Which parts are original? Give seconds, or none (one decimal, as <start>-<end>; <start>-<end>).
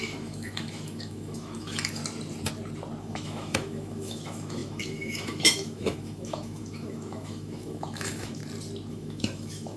2.0-3.0; 8.4-8.9